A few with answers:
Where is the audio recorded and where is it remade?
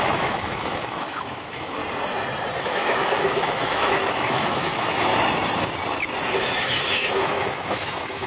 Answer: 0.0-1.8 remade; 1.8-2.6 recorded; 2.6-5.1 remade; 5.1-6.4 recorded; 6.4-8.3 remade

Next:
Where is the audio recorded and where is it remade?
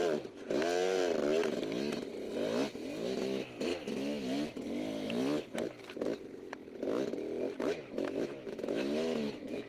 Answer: 0.0-3.2 recorded; 3.2-3.7 remade; 3.7-7.6 recorded; 7.6-9.7 remade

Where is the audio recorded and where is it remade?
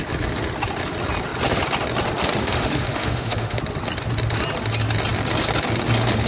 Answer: 0.0-2.4 recorded; 2.4-3.6 remade; 3.6-6.3 recorded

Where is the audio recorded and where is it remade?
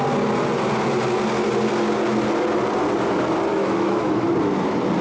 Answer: 0.0-3.5 recorded; 3.5-4.3 remade; 4.3-5.0 recorded